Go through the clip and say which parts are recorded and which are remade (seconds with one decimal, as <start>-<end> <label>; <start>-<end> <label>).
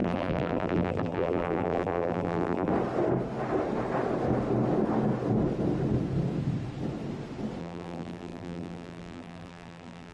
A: 0.0-2.7 remade; 2.7-7.6 recorded; 7.6-10.1 remade